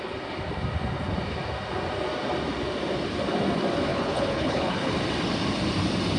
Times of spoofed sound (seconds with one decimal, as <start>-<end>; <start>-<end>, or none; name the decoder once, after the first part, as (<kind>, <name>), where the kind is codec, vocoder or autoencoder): 3.9-4.9 (codec, HILCodec)